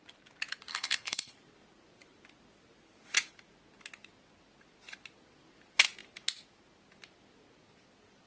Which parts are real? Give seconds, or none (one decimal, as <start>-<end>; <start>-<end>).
0.0-0.7; 1.3-8.3